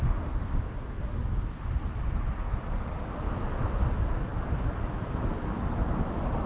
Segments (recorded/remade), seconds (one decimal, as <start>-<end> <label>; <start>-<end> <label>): 0.0-6.5 recorded